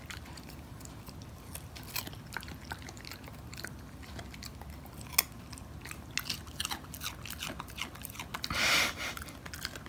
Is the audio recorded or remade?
recorded